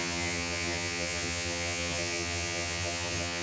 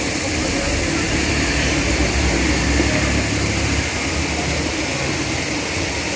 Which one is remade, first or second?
first